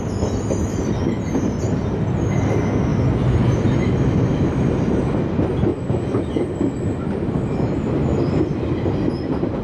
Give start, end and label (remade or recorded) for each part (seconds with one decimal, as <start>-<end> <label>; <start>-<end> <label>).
0.0-9.6 recorded